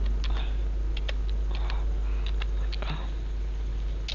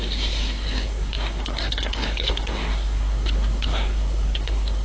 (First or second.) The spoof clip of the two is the second